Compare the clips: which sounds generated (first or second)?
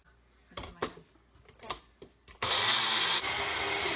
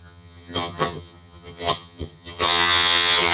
second